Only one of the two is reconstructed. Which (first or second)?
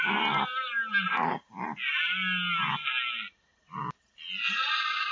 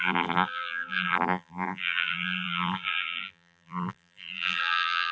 second